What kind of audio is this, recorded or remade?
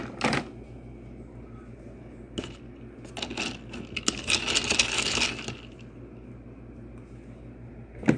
recorded